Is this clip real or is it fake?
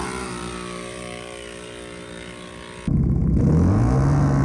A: real